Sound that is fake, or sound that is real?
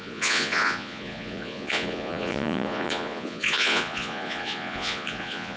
fake